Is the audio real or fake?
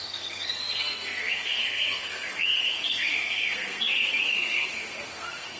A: fake